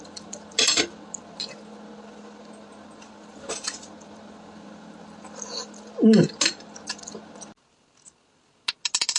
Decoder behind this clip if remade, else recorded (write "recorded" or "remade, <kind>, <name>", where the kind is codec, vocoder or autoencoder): recorded